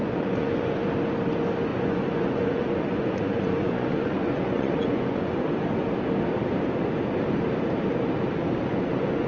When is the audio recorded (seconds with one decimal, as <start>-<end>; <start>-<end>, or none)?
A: 0.8-1.7; 5.4-8.7